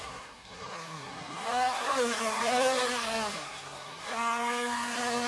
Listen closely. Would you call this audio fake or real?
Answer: fake